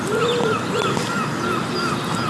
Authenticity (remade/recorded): recorded